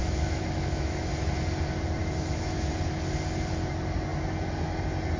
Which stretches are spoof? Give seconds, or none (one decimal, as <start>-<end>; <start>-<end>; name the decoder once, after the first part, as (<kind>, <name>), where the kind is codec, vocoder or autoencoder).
0.0-1.1 (autoencoder, DAC-VAE); 2.0-2.7